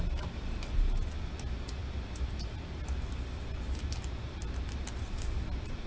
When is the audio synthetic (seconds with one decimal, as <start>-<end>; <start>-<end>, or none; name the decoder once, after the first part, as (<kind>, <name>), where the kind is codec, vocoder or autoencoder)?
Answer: none